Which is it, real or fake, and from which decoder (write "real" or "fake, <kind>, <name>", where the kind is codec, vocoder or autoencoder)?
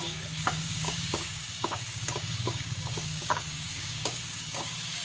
fake, codec, DAC